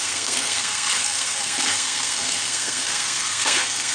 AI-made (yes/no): yes